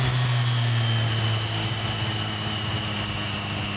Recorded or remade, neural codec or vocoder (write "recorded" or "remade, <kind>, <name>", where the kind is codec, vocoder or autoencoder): recorded